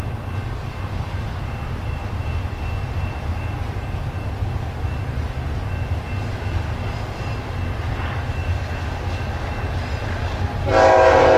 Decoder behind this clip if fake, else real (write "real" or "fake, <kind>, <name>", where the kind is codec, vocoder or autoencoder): real